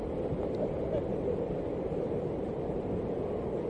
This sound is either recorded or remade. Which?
recorded